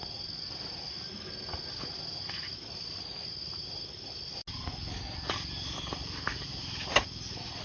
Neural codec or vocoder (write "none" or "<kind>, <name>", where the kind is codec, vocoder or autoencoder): none